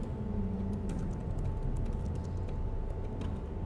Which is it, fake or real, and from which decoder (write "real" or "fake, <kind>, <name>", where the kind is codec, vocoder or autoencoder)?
real